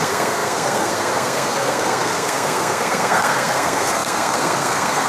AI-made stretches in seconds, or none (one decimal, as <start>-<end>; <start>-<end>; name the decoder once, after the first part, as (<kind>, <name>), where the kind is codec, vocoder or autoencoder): 0.0-5.1 (codec, SNAC)